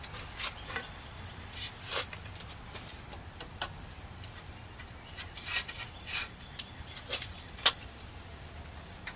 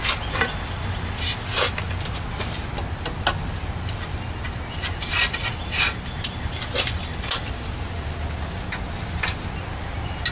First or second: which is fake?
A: first